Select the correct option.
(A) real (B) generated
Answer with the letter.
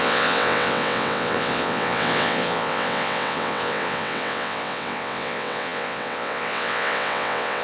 B